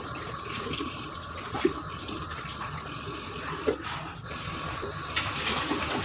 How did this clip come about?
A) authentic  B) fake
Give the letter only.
A